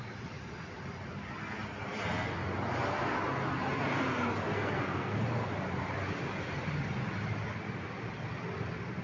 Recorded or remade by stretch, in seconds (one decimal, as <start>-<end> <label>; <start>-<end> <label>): 0.0-4.5 recorded; 4.5-5.2 remade; 5.2-9.0 recorded